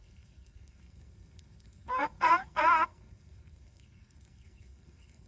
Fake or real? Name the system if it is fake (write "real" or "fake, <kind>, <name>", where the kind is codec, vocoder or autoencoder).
fake, codec, SNAC